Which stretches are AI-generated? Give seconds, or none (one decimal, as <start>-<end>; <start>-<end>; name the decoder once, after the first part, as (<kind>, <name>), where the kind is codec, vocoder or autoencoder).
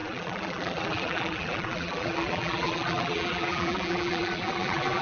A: 0.0-5.0 (vocoder, BigVGAN v2)